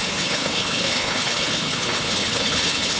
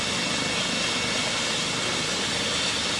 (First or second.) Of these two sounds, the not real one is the first